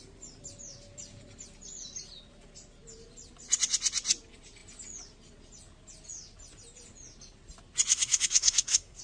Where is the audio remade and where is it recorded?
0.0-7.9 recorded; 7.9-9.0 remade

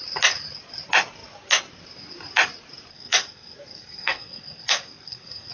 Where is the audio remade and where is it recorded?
0.0-2.9 recorded; 2.9-5.5 remade

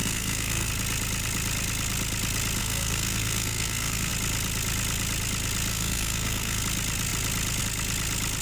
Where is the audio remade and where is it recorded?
0.0-0.7 remade; 0.7-2.6 recorded; 2.6-4.1 remade; 4.1-5.7 recorded; 5.7-6.6 remade; 6.6-8.4 recorded